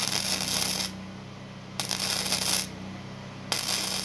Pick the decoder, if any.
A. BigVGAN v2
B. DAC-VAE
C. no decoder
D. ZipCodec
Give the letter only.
C